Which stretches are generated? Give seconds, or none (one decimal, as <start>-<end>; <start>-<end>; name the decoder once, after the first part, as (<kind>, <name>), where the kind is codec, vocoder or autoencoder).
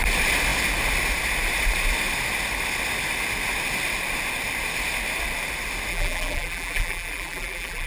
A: 5.9-7.9 (vocoder, BigVGAN v2)